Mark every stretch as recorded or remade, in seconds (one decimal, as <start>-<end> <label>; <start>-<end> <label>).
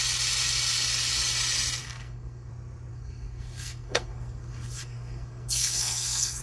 0.0-1.8 recorded; 1.8-2.5 remade; 2.5-2.9 recorded; 2.9-6.4 remade